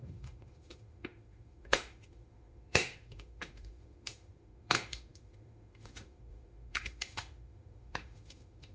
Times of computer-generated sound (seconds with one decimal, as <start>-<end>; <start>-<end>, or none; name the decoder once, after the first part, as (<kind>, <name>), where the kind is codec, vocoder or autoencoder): 0.0-8.7 (autoencoder, DAC-VAE)